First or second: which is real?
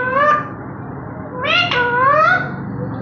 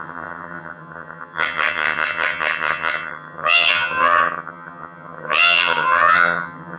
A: first